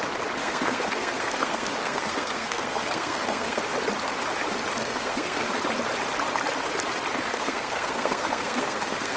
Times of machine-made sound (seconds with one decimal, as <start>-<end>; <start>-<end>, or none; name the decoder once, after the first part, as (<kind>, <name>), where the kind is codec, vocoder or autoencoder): 0.4-3.6 (codec, SNAC); 4.8-5.6; 7.3-9.2